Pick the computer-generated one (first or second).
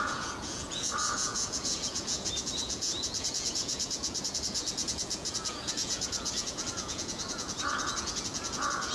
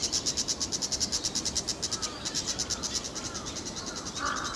first